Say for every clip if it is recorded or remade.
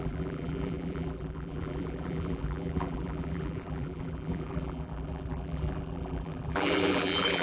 remade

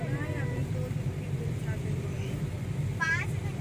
remade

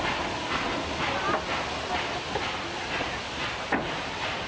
recorded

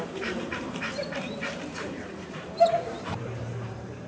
remade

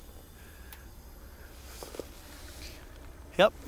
recorded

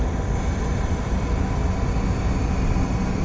recorded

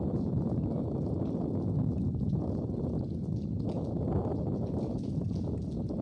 recorded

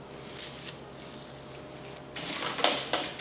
recorded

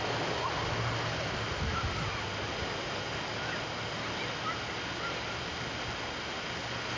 recorded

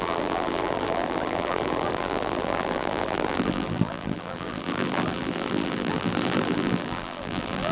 remade